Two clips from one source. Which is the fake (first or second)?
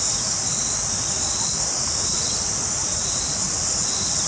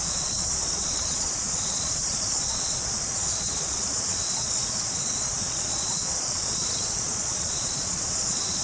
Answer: second